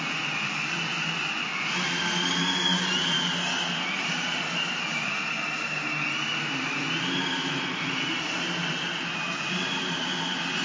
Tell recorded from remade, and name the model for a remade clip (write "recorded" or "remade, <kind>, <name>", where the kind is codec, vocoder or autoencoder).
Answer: recorded